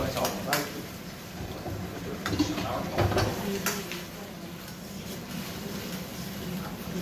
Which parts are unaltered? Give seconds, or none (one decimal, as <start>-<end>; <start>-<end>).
4.2-7.0